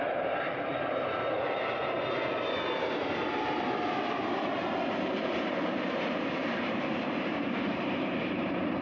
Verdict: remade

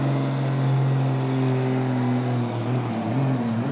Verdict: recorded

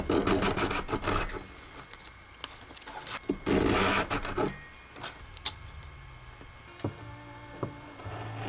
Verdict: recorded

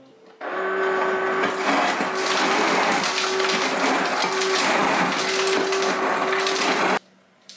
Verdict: recorded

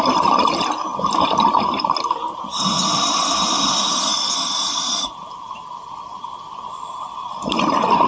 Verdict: remade